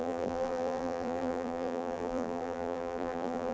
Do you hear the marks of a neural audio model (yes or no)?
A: yes